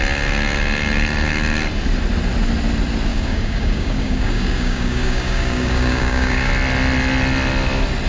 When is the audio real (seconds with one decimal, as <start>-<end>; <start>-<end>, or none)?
0.0-3.1; 6.5-8.1